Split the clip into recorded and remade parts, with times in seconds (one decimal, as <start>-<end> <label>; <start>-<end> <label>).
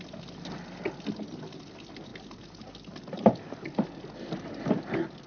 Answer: 0.0-5.3 recorded